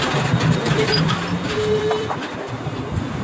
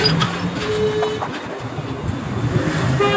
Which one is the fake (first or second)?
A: first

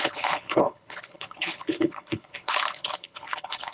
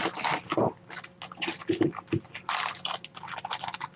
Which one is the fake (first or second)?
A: first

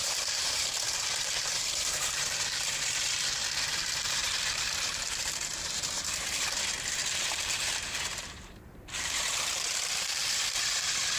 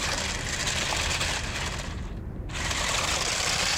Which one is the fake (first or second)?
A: first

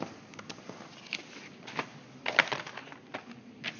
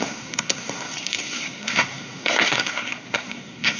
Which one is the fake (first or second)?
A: second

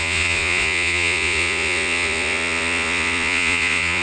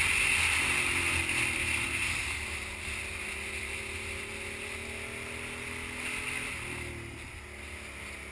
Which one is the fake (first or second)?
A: first